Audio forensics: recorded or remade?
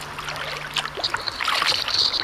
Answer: recorded